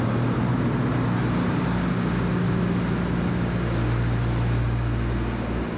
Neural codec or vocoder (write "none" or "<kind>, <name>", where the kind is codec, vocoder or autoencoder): none